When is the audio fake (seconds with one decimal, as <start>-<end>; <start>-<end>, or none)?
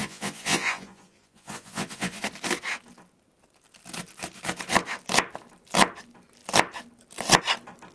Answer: 0.0-2.2